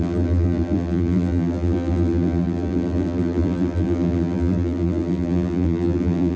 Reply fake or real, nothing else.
fake